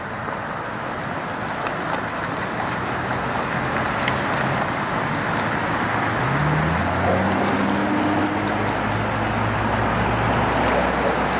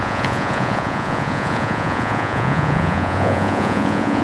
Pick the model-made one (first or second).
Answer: second